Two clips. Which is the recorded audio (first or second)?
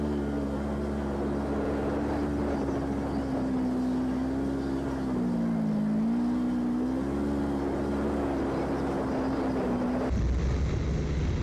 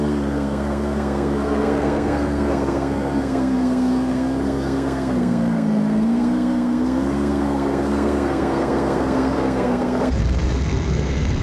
first